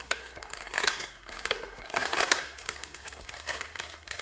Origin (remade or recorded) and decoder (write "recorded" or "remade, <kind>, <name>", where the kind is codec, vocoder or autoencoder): remade, codec, SNAC